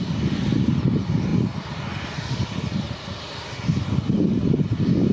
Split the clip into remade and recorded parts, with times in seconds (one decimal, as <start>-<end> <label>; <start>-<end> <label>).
0.0-5.1 recorded